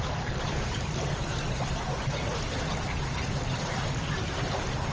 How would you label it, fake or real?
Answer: fake